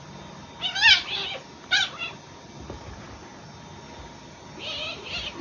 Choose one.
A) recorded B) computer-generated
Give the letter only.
A